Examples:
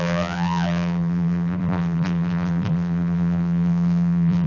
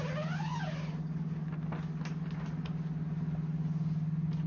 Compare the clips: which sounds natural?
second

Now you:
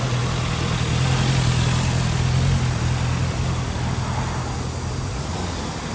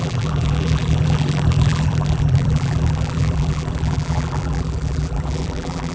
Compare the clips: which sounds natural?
first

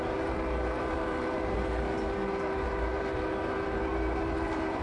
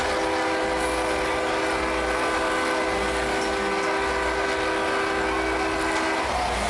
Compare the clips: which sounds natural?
second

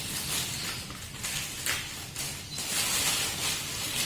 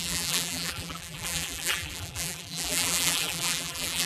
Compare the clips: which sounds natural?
first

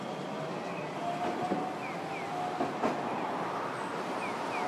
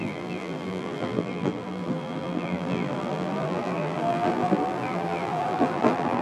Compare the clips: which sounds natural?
first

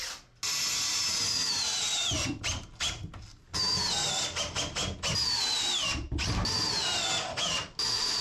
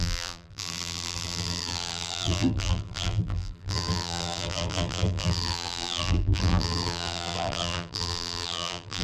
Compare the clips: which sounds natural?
first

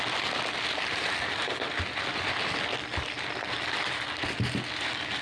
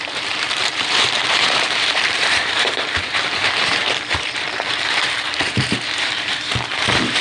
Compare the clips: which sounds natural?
first